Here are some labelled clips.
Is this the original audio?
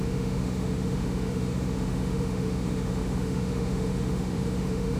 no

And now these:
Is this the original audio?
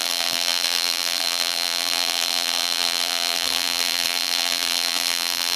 no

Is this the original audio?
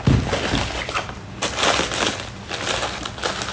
yes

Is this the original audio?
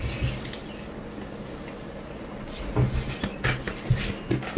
yes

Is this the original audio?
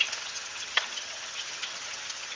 no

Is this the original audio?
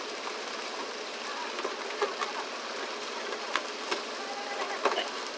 yes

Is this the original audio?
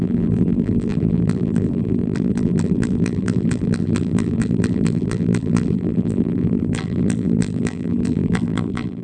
no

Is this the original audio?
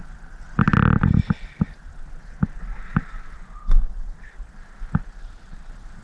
yes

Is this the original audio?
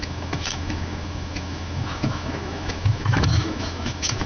no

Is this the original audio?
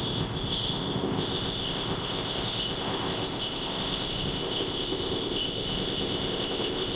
no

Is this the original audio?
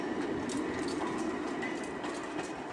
yes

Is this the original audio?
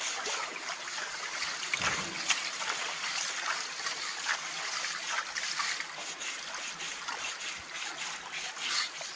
yes